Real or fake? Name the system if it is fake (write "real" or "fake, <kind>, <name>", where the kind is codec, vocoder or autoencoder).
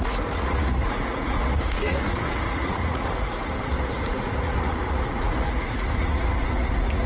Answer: fake, vocoder, Vocos